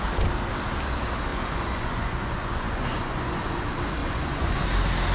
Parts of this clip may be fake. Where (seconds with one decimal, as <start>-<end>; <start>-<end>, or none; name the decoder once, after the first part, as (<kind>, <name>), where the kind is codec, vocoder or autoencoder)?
1.3-3.6 (vocoder, Vocos); 4.0-4.6

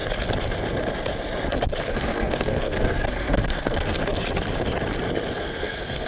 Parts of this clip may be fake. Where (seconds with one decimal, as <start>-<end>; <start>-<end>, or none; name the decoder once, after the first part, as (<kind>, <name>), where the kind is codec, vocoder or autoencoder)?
1.9-4.0 (codec, SNAC); 5.3-6.1